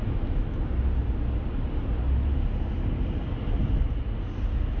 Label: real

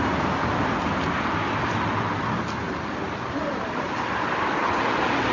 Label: real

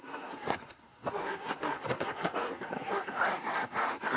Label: fake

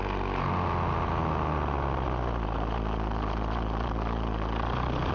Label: real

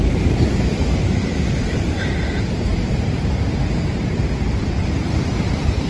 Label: fake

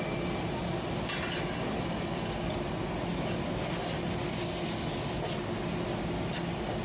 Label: real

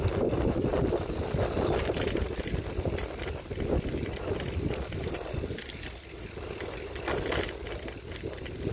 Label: real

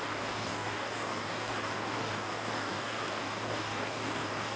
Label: fake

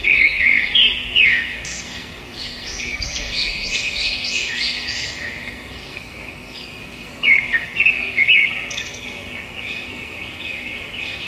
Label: fake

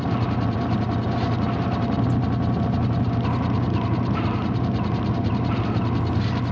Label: real